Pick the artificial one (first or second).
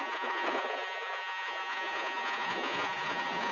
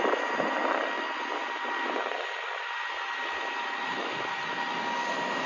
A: first